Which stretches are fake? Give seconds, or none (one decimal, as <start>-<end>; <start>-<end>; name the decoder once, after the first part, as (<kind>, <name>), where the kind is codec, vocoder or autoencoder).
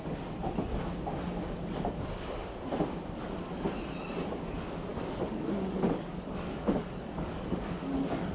4.9-8.3 (codec, DAC)